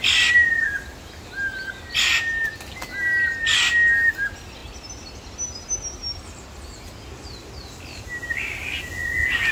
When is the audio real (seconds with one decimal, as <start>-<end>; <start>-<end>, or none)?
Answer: 0.0-9.5